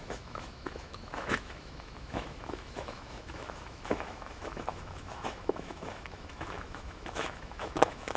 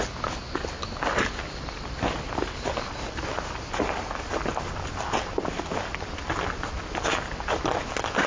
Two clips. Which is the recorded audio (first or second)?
second